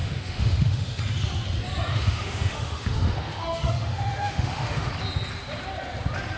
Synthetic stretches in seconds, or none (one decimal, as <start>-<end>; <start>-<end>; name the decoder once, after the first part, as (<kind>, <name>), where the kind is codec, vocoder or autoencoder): 0.0-1.0 (autoencoder, DAC-VAE); 1.9-4.9